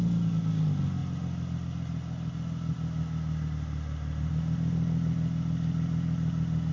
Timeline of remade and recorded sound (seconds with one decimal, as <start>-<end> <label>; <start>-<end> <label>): 0.0-6.7 recorded